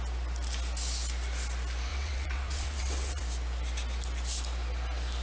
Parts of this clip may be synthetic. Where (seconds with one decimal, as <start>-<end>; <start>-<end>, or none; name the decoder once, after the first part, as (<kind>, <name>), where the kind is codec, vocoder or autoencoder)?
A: 1.9-3.2 (vocoder, WaveNeXt)